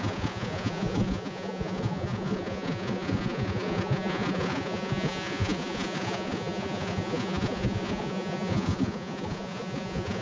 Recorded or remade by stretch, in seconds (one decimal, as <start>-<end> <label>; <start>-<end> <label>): 0.0-10.2 remade